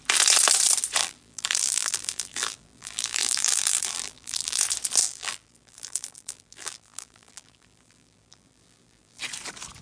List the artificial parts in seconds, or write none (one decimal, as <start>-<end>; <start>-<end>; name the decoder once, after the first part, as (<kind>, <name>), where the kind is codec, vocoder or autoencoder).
1.0-4.6 (vocoder, BigVGAN v2); 5.0-9.2